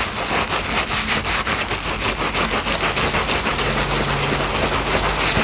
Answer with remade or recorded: recorded